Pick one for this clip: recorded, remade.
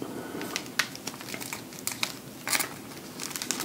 recorded